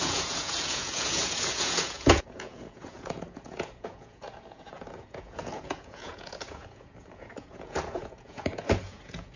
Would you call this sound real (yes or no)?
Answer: no